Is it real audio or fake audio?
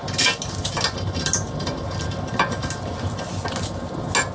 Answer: real